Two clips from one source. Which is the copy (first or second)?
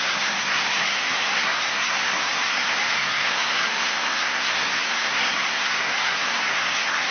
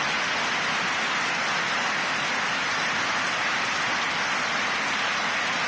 first